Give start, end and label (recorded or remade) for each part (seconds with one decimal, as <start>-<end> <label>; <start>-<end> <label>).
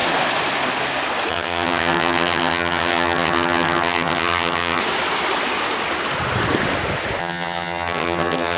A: 0.0-1.3 recorded; 1.3-4.8 remade; 4.8-7.2 recorded; 7.2-8.6 remade